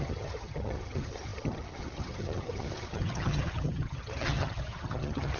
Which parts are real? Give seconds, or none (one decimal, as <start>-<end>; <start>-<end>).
none